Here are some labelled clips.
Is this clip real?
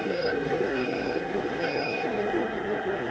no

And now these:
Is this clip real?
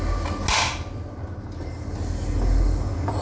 yes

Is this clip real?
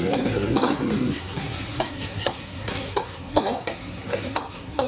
no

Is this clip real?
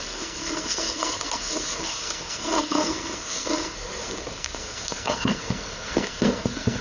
no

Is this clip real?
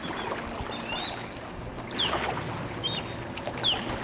yes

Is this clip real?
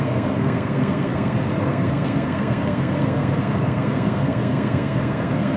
no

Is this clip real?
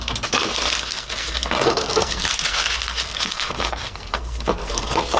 no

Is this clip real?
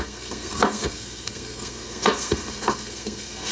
no